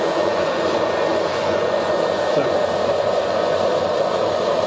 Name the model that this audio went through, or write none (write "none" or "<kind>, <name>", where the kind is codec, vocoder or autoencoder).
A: vocoder, Vocos